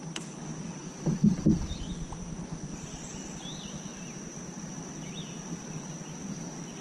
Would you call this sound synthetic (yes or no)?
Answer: no